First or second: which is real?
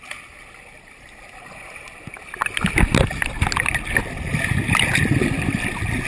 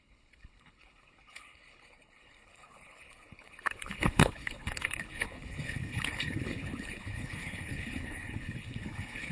first